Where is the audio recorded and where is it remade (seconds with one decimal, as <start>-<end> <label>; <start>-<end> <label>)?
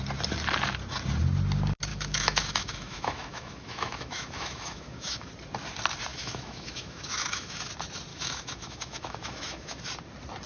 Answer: 0.0-1.9 recorded; 1.9-5.3 remade; 5.3-6.1 recorded; 6.1-7.6 remade; 7.6-8.1 recorded; 8.1-9.8 remade; 9.8-10.5 recorded